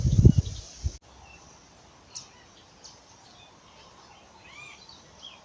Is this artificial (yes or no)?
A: no